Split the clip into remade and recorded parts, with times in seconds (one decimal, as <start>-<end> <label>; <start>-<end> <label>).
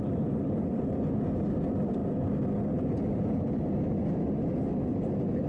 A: 0.0-5.5 recorded